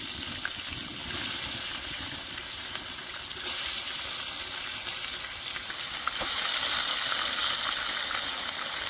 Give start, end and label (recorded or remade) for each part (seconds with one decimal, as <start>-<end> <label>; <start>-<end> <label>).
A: 0.0-1.0 recorded; 1.0-4.2 remade; 4.2-8.9 recorded